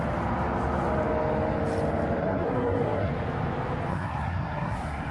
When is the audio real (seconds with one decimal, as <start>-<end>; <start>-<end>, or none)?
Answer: 0.0-2.2; 3.1-3.9